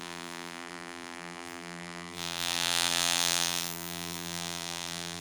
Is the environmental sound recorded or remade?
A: remade